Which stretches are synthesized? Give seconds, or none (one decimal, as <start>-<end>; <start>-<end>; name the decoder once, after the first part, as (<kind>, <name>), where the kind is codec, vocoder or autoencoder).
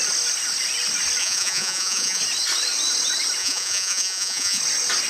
1.2-2.2 (vocoder, Vocos); 3.4-4.6